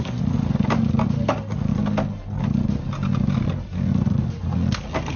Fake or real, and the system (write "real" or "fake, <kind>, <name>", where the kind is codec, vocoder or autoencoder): real